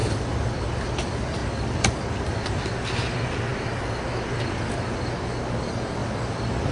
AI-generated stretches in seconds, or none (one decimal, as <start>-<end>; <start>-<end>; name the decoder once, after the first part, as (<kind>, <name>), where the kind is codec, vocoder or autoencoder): 1.4-2.6 (vocoder, BigVGAN v2); 6.0-6.7